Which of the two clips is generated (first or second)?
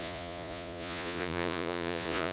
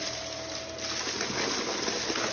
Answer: first